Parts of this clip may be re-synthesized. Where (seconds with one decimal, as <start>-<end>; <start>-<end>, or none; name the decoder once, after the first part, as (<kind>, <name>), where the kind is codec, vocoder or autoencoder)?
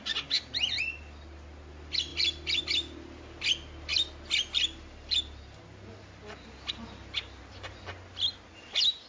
none